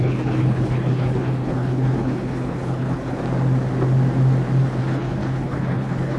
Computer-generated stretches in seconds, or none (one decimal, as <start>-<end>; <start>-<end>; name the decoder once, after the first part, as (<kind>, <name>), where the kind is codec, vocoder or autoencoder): 0.0-3.2 (codec, HILCodec); 4.8-6.2